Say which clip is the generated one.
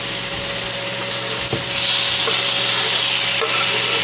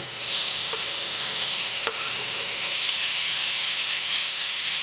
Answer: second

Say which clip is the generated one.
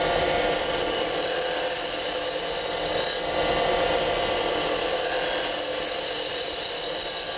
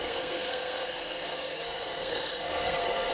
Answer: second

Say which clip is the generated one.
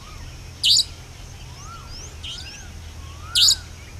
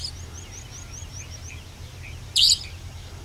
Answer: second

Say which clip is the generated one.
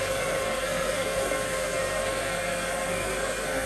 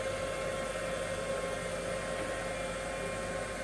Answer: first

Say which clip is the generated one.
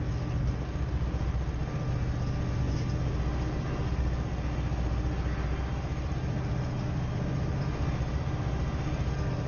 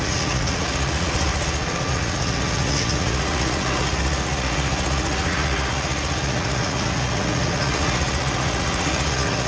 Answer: second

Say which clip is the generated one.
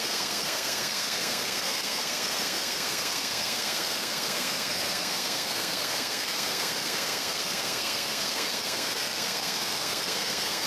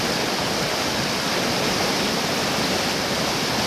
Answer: first